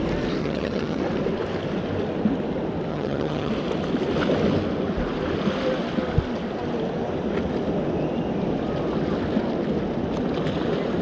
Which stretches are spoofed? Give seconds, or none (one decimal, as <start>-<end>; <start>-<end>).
0.4-1.0; 2.9-3.5